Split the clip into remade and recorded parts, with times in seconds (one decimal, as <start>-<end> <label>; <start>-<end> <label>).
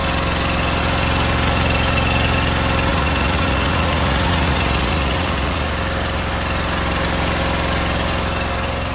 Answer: 0.0-2.9 recorded; 2.9-5.7 remade; 5.7-8.9 recorded